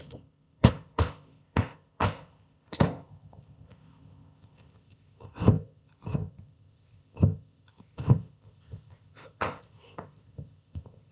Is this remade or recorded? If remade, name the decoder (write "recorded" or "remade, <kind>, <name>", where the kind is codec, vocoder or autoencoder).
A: remade, codec, ZipCodec